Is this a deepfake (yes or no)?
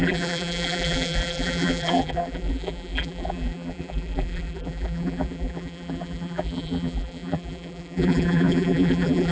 yes